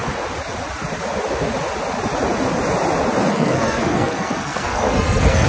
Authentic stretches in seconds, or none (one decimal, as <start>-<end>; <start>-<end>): 0.0-3.3